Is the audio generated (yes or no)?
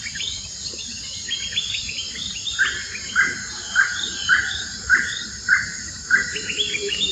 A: no